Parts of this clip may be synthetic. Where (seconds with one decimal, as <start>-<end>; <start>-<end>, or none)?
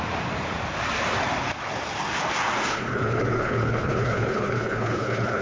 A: 2.7-5.4